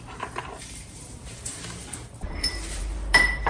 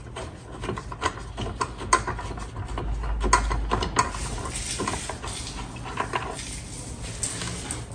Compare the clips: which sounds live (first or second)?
second